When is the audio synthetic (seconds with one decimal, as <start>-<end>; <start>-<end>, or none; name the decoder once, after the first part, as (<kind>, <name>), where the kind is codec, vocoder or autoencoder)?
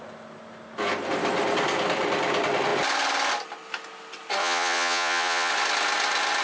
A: 4.4-5.5 (vocoder, Vocos)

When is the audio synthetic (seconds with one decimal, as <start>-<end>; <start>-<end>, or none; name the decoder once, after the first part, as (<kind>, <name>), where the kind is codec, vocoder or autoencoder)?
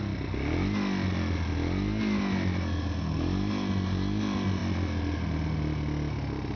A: none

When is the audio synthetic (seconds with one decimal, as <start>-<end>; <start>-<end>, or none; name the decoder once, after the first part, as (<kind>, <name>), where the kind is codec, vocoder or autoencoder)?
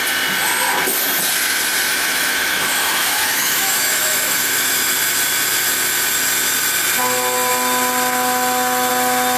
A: 1.9-4.7 (autoencoder, DAC-VAE)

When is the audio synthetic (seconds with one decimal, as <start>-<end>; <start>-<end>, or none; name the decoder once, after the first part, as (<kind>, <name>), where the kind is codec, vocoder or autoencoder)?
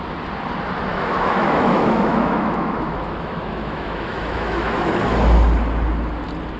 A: 0.9-4.9 (autoencoder, DAC-VAE)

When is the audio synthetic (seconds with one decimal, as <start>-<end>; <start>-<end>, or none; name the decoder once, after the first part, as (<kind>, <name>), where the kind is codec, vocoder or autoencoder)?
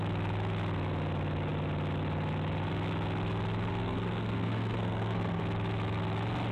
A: 3.7-5.4 (codec, SNAC)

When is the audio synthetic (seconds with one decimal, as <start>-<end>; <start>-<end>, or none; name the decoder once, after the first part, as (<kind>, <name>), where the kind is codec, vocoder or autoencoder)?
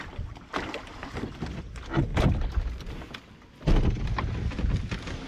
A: 2.1-3.2 (vocoder, BigVGAN v2)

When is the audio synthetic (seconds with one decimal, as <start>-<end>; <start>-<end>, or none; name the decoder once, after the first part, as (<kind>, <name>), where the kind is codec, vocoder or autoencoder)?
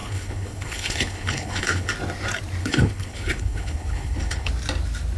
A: 0.0-1.9 (codec, HILCodec); 2.6-4.5